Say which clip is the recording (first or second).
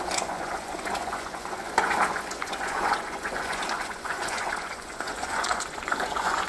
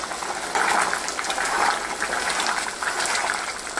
second